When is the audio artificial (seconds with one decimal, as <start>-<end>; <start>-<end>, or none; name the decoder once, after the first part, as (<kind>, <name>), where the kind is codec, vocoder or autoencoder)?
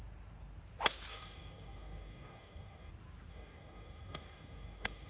1.1-2.9 (codec, DAC); 3.3-5.1